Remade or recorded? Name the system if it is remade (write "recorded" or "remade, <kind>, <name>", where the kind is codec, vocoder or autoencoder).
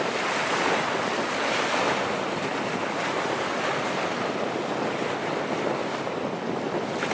recorded